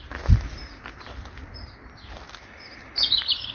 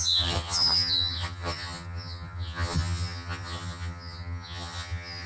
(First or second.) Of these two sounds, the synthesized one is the second